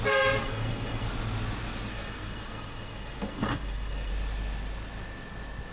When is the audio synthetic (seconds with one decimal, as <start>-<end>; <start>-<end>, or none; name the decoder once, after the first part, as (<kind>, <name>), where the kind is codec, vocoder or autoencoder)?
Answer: 0.4-1.1 (codec, SNAC); 1.9-4.1